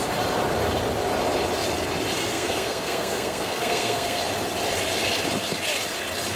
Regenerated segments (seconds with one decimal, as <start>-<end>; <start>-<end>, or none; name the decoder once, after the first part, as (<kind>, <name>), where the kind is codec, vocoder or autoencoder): 2.2-4.2 (codec, SNAC)

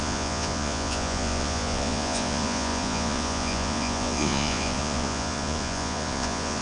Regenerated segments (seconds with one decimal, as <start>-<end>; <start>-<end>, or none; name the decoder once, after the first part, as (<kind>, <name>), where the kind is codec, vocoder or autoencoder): 0.0-6.6 (vocoder, Vocos)